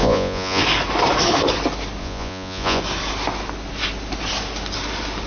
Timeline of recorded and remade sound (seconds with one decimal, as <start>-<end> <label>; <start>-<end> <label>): 0.0-0.6 remade; 0.6-2.0 recorded; 2.0-2.8 remade; 2.8-5.3 recorded